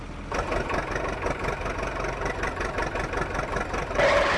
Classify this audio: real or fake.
real